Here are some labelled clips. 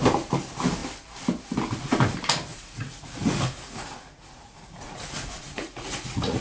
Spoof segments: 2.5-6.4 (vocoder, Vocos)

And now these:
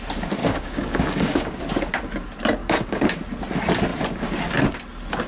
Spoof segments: 0.4-1.6 (codec, DAC); 2.6-3.2

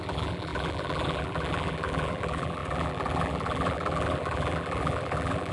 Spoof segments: 0.0-5.5 (vocoder, BigVGAN v2)

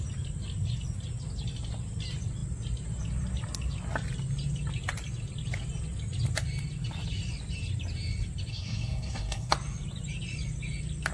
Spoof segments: 8.5-9.5 (codec, SNAC)

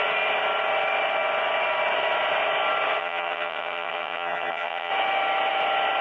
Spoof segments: 3.0-4.9 (vocoder, HiFi-GAN)